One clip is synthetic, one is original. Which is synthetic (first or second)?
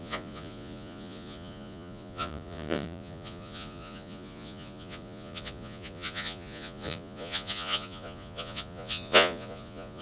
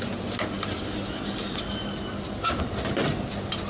first